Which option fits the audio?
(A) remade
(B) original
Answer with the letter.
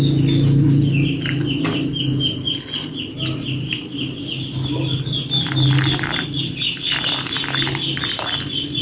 B